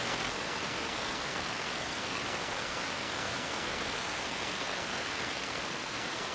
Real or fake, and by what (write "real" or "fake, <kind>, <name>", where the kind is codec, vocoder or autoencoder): fake, codec, SNAC